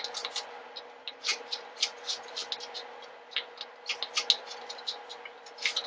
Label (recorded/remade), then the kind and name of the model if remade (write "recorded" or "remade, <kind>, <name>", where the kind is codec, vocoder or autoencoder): recorded